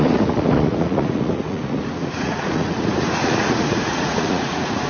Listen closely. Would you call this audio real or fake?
fake